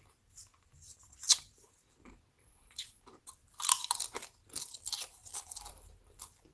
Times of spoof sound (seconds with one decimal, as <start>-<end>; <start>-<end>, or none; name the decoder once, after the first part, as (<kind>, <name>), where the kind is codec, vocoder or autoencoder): 2.4-3.0 (vocoder, Vocos)